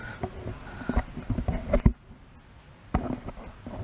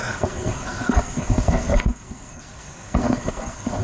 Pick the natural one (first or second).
first